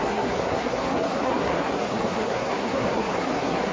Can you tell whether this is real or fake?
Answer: fake